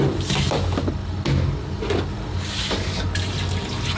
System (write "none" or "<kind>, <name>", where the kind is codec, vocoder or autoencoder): none